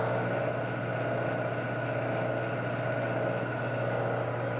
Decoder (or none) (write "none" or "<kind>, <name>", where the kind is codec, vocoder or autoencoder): none